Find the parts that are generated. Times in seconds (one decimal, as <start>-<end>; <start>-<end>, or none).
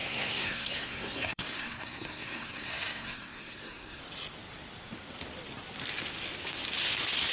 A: 0.0-4.0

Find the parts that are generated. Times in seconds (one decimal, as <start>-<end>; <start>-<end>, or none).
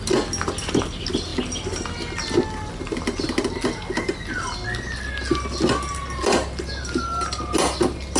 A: none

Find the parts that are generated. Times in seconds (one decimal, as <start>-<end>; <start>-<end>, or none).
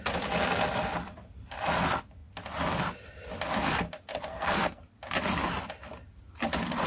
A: 4.3-4.8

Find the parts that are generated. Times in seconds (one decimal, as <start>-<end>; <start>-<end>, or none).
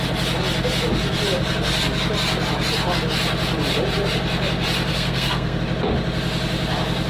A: 4.9-5.6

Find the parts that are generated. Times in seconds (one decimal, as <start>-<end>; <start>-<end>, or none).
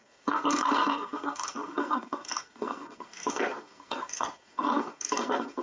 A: 0.0-5.6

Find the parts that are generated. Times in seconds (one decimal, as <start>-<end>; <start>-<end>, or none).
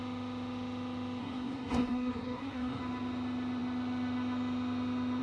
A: 1.2-2.8